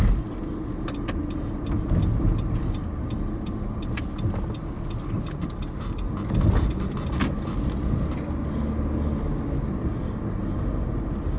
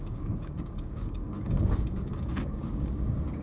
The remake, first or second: second